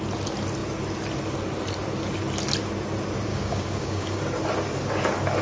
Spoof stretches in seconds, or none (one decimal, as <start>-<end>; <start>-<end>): 3.3-4.2